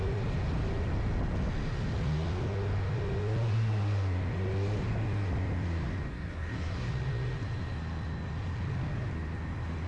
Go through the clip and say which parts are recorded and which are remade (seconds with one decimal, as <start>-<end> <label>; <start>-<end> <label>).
0.0-6.1 recorded; 6.1-6.9 remade; 6.9-9.9 recorded